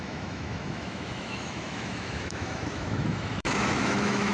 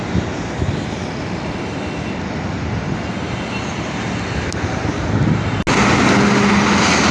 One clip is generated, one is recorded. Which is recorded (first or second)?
second